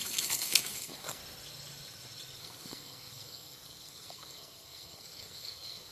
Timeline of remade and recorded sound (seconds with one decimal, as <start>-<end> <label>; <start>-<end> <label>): 0.0-1.2 remade; 1.2-2.4 recorded; 2.4-5.9 remade